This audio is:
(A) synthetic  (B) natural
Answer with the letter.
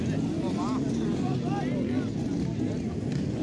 B